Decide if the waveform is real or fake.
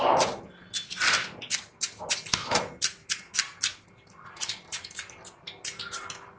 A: real